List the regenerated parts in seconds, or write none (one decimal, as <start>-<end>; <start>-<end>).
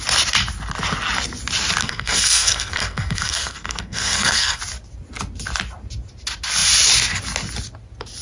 1.8-4.6